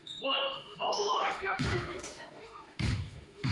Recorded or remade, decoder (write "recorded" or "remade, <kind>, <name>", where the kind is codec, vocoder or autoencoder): remade, autoencoder, DAC-VAE